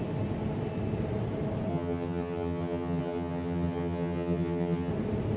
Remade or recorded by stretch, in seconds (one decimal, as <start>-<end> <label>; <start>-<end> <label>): 0.0-1.7 recorded; 1.7-4.9 remade; 4.9-5.4 recorded